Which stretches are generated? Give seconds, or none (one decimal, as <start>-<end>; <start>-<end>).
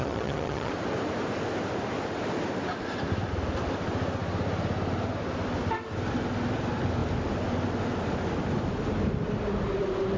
0.0-0.7